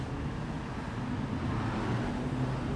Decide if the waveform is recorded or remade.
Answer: recorded